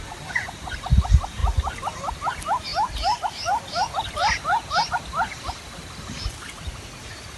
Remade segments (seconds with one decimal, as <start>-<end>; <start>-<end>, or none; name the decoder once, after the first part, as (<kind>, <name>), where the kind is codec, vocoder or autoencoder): none